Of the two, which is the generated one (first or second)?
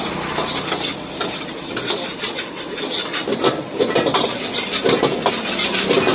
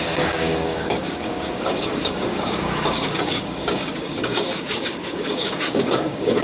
second